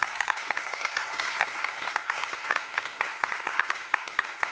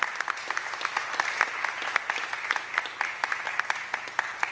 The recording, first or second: second